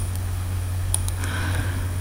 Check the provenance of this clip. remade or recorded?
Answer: remade